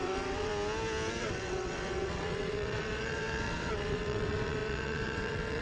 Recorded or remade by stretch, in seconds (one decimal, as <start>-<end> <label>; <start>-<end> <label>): 0.0-0.5 remade; 0.5-1.2 recorded; 1.2-5.6 remade